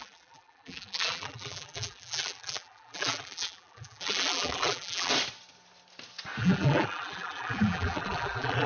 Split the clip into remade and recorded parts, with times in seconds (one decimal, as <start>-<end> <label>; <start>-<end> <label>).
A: 0.0-5.1 remade; 5.1-6.4 recorded; 6.4-8.7 remade